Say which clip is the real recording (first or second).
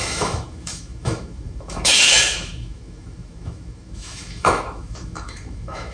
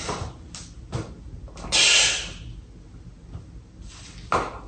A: second